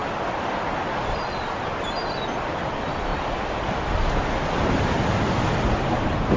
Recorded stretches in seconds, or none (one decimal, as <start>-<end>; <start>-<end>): 0.0-6.4